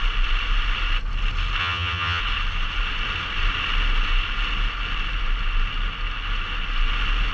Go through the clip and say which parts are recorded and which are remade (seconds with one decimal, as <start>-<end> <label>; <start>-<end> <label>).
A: 0.0-1.6 recorded; 1.6-2.2 remade; 2.2-7.3 recorded